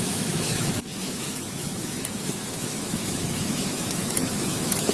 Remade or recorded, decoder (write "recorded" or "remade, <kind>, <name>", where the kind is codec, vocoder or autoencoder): remade, autoencoder, DAC-VAE